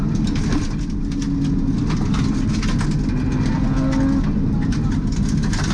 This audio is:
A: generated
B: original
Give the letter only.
B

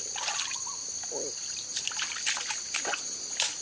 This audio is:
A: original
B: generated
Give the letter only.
A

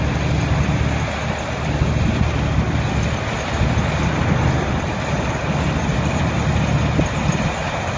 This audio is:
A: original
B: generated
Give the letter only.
A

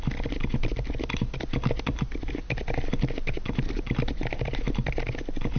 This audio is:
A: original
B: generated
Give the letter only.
A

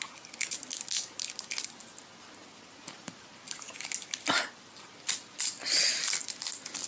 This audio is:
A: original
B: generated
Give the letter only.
A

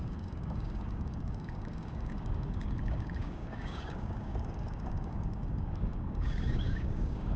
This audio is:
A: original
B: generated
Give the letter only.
B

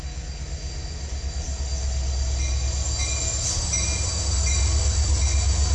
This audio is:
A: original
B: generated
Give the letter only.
A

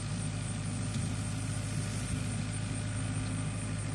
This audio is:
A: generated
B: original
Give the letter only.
B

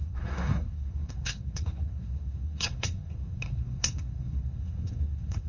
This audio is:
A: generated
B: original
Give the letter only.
A